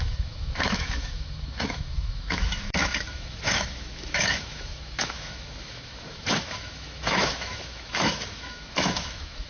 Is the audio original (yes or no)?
no